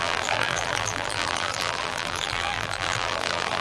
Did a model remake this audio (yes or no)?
yes